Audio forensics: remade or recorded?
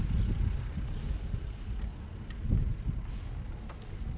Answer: recorded